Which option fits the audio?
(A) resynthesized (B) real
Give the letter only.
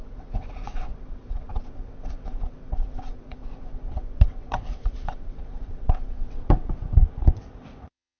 A